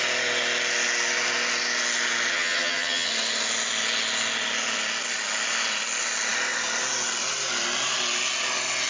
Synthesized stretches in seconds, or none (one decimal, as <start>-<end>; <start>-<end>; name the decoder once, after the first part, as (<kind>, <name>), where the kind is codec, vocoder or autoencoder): 2.3-3.1 (vocoder, HiFi-GAN)